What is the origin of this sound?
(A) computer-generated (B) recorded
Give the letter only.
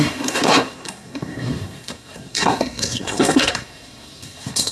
A